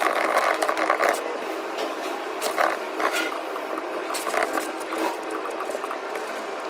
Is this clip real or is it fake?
real